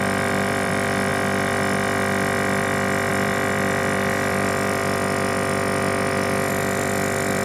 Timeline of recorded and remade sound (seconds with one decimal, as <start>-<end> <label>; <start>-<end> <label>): 0.0-1.1 remade; 1.1-3.1 recorded; 3.1-4.8 remade; 4.8-6.5 recorded; 6.5-7.4 remade